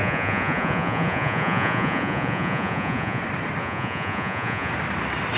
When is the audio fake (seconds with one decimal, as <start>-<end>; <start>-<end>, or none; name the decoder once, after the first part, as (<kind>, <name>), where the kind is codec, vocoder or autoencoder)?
0.0-3.2 (vocoder, Vocos); 3.6-4.7